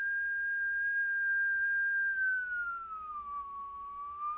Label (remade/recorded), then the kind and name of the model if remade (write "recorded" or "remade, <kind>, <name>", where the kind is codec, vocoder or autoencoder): recorded